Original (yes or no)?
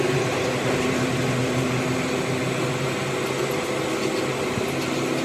yes